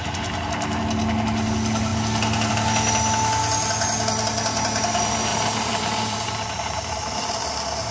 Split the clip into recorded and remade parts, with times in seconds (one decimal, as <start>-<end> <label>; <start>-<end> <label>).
0.0-5.3 recorded; 5.3-7.5 remade; 7.5-7.9 recorded

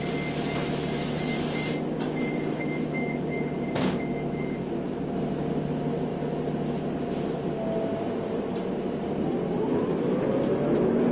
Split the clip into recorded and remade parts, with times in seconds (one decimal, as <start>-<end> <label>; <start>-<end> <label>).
0.0-11.1 recorded

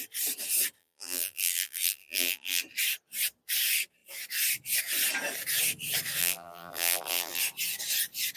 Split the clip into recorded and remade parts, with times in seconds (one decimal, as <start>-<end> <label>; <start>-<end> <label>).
0.0-0.8 recorded; 0.8-2.6 remade; 2.6-6.2 recorded; 6.2-7.4 remade; 7.4-8.4 recorded

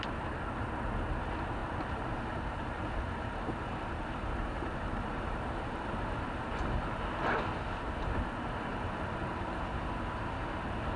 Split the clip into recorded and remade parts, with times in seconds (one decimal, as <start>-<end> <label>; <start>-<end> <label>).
0.0-1.6 recorded; 1.6-6.2 remade; 6.2-8.7 recorded; 8.7-9.8 remade; 9.8-11.0 recorded

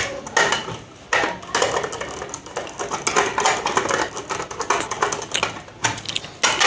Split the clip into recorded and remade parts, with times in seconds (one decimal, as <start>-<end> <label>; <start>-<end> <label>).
0.0-6.7 recorded

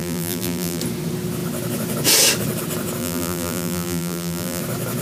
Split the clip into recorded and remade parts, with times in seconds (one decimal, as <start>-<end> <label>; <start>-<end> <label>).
0.0-0.8 remade; 0.8-3.0 recorded; 3.0-4.6 remade; 4.6-5.0 recorded